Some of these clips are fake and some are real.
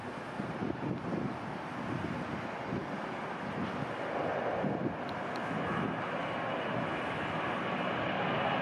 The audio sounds real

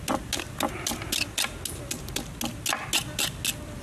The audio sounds real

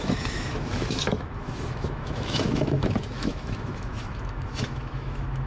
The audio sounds fake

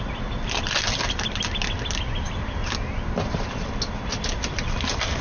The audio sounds real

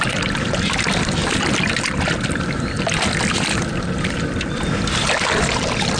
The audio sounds fake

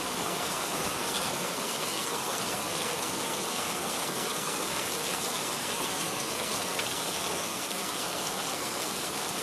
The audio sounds fake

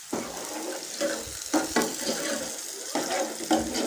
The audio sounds real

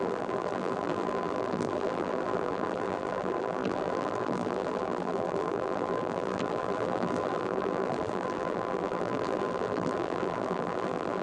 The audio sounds fake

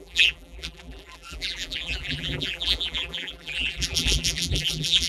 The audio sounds fake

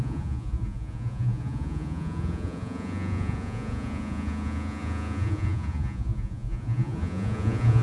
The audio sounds fake